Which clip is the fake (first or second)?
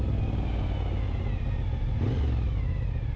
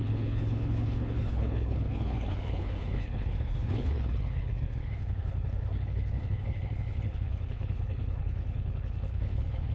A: second